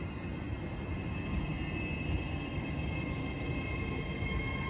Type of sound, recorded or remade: recorded